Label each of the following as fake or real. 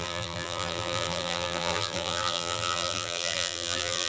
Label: fake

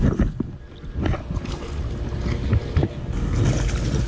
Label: real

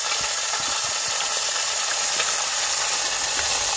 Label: real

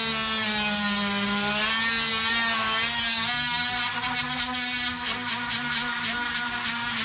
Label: real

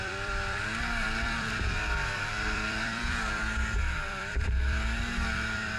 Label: fake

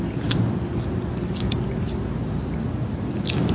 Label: real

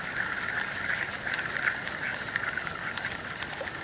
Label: real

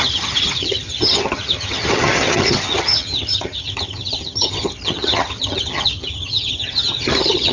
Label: fake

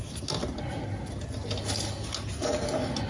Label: real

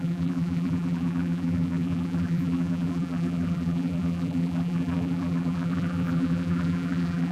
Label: fake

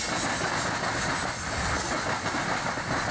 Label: real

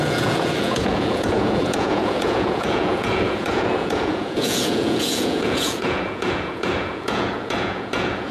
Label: fake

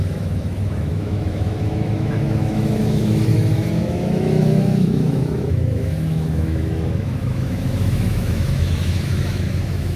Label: fake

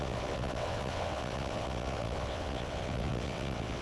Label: fake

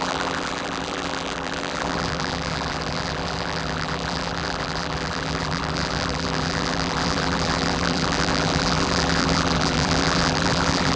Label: fake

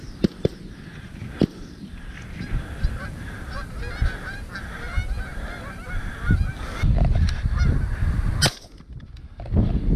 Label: real